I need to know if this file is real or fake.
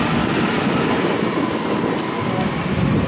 real